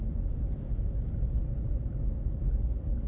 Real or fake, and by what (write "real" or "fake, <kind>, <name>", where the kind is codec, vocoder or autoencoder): fake, vocoder, BigVGAN v2